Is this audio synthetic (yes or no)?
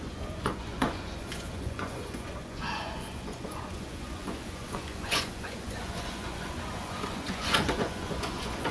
yes